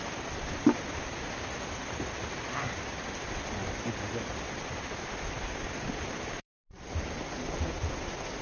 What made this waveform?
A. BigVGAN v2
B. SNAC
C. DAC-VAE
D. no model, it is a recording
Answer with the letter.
A